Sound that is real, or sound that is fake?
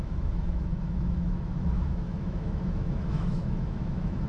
fake